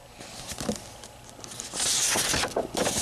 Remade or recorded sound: recorded